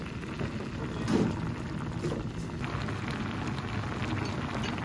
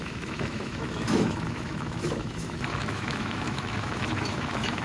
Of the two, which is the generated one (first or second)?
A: second